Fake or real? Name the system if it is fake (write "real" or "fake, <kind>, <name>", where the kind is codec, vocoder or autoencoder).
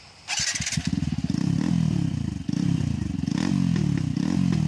real